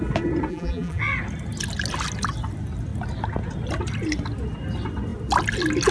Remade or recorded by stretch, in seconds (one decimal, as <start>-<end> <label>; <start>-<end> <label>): 0.0-0.5 recorded; 0.5-1.0 remade; 1.0-5.9 recorded